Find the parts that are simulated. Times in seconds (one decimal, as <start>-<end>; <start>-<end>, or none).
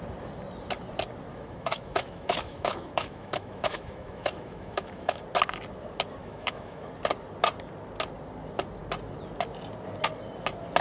1.3-5.2; 6.2-6.9